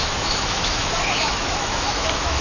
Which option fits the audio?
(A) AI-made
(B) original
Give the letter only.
A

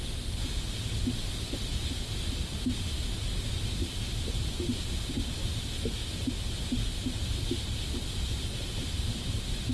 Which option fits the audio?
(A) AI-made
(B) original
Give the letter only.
B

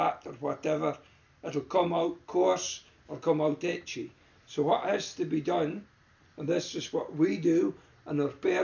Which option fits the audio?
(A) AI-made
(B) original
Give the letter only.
B